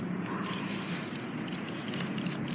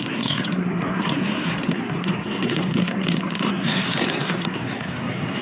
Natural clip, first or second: first